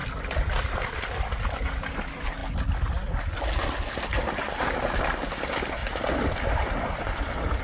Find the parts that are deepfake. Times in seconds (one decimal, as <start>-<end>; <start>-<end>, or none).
0.0-1.1; 2.4-3.4; 5.8-7.6